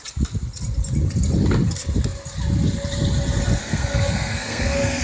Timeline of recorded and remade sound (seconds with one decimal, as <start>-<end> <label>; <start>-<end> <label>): 0.0-3.6 recorded; 3.6-5.0 remade